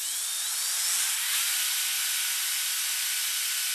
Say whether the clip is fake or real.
real